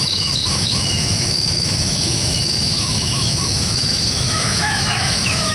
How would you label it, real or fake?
fake